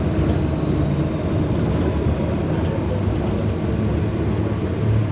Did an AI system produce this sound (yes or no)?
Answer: no